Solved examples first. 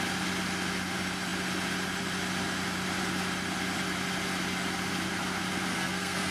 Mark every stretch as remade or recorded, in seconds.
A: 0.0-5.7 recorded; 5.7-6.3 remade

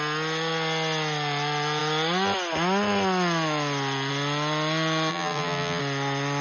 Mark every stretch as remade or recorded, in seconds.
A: 0.0-5.1 recorded; 5.1-5.8 remade; 5.8-6.4 recorded

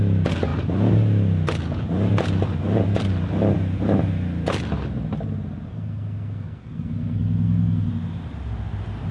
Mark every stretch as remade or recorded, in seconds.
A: 0.0-5.7 recorded; 5.7-7.9 remade; 7.9-9.1 recorded

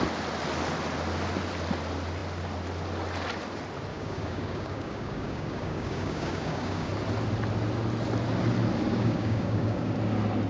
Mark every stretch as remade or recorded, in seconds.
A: 0.0-3.9 recorded; 3.9-6.9 remade; 6.9-8.9 recorded; 8.9-9.9 remade; 9.9-10.5 recorded

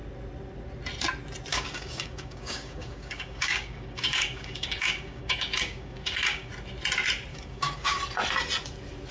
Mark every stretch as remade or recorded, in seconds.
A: 0.0-1.5 recorded; 1.5-6.5 remade; 6.5-7.3 recorded; 7.3-8.0 remade; 8.0-9.1 recorded